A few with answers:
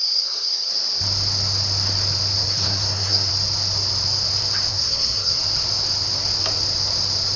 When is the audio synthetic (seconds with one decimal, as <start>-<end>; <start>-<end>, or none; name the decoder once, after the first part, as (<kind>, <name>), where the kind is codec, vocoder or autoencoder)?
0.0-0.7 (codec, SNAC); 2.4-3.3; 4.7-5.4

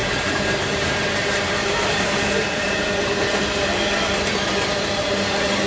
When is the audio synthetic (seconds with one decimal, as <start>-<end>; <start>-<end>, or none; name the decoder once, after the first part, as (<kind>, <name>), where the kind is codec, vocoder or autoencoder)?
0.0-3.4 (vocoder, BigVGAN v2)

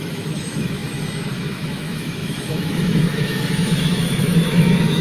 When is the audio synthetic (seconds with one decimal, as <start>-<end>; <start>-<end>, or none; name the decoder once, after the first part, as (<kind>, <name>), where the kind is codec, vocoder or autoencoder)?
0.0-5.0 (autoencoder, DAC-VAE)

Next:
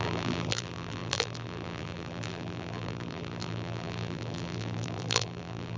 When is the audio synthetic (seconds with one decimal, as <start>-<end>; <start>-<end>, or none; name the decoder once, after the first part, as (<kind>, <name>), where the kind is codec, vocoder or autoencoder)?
0.0-5.8 (vocoder, BigVGAN v2)

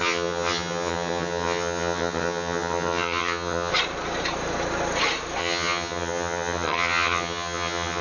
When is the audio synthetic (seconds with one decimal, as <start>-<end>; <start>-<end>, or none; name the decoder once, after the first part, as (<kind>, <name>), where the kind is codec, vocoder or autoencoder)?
0.0-3.7 (vocoder, HiFi-GAN); 5.4-8.0

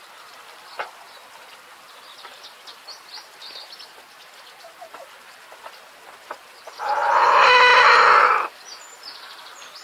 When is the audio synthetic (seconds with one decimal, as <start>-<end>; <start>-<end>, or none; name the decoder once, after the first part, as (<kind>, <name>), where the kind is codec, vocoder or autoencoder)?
none

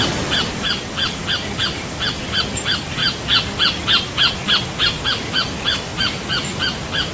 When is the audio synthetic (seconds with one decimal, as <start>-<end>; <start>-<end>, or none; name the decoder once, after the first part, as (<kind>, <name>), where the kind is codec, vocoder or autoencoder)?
5.9-7.1 (vocoder, BigVGAN v2)

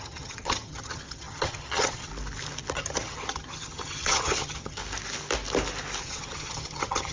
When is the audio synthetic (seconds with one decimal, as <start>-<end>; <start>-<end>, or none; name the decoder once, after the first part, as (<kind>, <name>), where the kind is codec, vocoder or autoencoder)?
0.0-2.1 (vocoder, HiFi-GAN); 2.7-4.8; 6.0-7.1